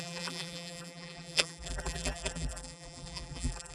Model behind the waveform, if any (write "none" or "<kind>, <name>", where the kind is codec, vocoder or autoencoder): vocoder, BigVGAN v2